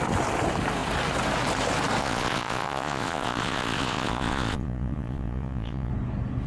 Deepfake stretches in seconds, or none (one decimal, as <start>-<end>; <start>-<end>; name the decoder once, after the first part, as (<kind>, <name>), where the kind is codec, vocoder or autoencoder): 2.0-5.9 (vocoder, Vocos)